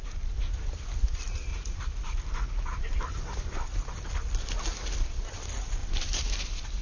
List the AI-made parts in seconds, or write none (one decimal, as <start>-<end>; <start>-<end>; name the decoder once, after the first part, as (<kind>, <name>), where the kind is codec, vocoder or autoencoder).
1.5-3.9 (vocoder, BigVGAN v2); 5.8-6.3